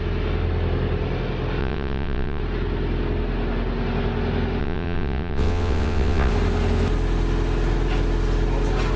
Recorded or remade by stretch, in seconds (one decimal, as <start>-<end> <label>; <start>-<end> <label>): 0.0-1.6 recorded; 1.6-2.4 remade; 2.4-4.6 recorded; 4.6-6.3 remade; 6.3-9.0 recorded